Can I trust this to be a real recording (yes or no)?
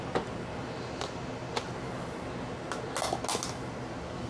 yes